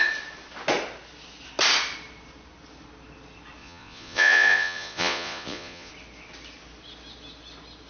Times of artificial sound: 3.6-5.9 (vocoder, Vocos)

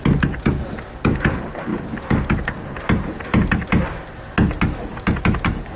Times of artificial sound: none

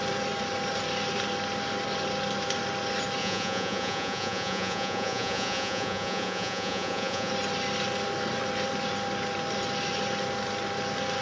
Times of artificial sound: 3.2-7.3 (vocoder, Vocos)

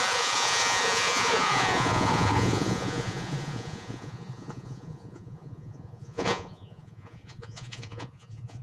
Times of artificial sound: 0.0-8.6 (vocoder, Vocos)

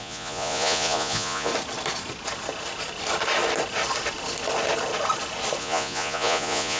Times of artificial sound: 0.0-1.5 (vocoder, Vocos); 5.6-6.8

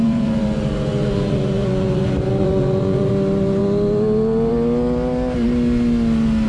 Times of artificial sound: 0.0-2.0 (vocoder, Vocos); 2.4-3.1

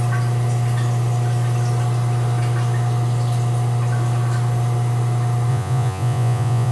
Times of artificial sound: 5.5-6.7 (vocoder, Vocos)